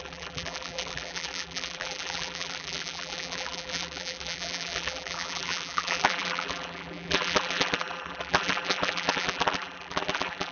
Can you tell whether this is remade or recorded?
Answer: remade